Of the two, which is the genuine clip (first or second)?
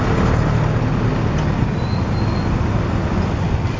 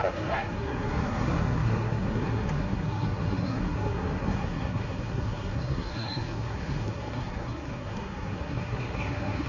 first